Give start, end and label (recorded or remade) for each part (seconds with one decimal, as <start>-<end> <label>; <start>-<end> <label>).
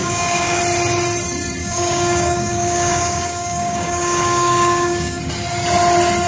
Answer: 0.0-0.6 remade; 0.6-1.6 recorded; 1.6-5.2 remade; 5.2-6.3 recorded